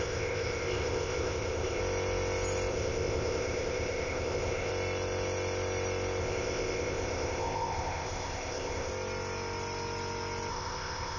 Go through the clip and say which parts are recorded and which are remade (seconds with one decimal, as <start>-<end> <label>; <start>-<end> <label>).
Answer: 0.0-1.8 remade; 1.8-2.7 recorded; 2.7-4.7 remade; 4.7-6.2 recorded; 6.2-8.9 remade; 8.9-10.5 recorded; 10.5-11.2 remade